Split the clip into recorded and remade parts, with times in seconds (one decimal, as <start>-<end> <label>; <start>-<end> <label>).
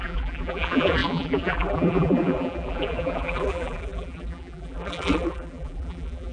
0.0-6.3 remade